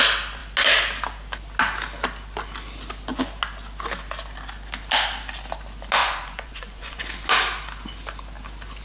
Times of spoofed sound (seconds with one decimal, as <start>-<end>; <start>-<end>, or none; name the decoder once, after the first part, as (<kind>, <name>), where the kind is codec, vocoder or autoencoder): 6.0-7.0 (vocoder, Vocos)